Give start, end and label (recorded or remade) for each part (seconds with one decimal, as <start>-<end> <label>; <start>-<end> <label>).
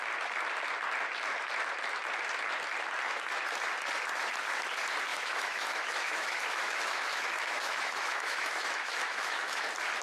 0.0-5.1 recorded; 5.1-9.6 remade; 9.6-10.0 recorded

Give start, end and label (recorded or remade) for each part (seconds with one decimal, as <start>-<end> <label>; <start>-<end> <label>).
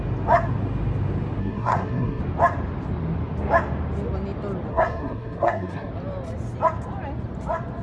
0.0-1.4 recorded; 1.4-2.2 remade; 2.2-4.7 recorded; 4.7-5.9 remade; 5.9-7.8 recorded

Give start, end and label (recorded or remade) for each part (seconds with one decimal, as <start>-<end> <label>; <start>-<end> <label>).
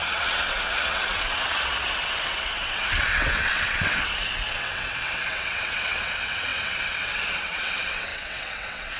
0.0-9.0 remade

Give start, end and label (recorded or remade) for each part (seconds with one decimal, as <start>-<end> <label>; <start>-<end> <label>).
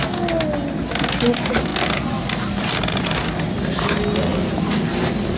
0.0-5.4 recorded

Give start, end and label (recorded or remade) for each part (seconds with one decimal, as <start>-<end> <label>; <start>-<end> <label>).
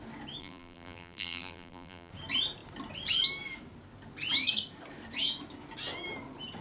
0.0-0.4 recorded; 0.4-2.1 remade; 2.1-6.6 recorded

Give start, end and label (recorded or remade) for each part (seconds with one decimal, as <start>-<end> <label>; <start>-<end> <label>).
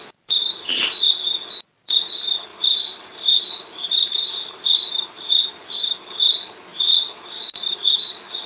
0.0-2.5 recorded; 2.5-4.9 remade; 4.9-6.7 recorded; 6.7-7.7 remade; 7.7-8.5 recorded